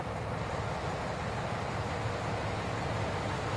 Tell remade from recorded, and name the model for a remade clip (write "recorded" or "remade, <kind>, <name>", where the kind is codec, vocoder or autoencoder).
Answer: recorded